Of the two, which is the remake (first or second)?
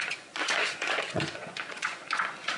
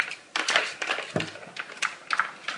first